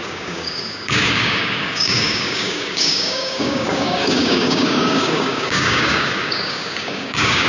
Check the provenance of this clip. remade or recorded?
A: remade